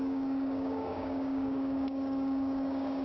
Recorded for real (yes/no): no